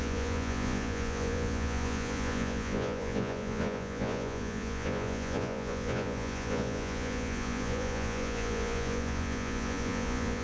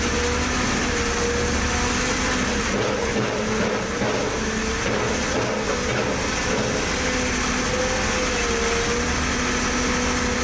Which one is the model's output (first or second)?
first